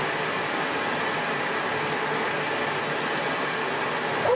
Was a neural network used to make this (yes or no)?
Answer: no